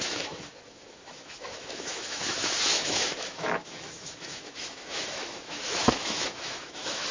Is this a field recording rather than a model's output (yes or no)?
no